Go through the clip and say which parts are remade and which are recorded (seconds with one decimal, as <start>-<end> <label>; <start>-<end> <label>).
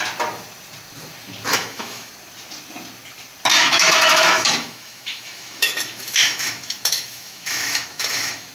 0.0-1.5 recorded; 1.5-2.1 remade; 2.1-3.5 recorded; 3.5-8.5 remade